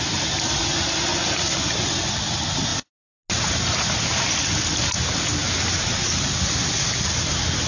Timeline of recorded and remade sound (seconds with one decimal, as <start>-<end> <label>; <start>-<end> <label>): 0.0-7.7 recorded